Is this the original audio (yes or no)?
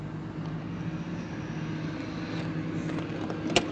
yes